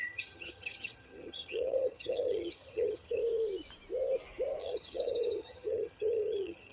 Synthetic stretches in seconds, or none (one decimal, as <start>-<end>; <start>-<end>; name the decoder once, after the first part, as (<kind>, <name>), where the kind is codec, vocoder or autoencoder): 0.0-3.2 (vocoder, HiFi-GAN); 4.6-6.7